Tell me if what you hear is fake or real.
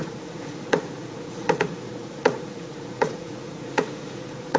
fake